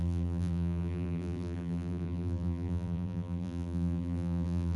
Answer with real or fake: fake